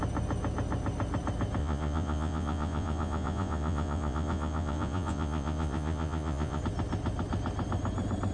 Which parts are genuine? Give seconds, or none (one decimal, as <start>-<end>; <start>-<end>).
0.0-1.6; 6.6-8.3